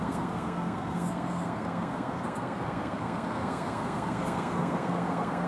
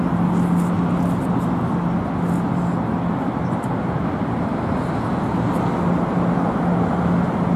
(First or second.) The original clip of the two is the second